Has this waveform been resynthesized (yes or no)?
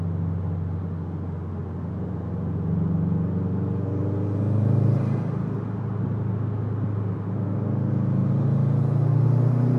no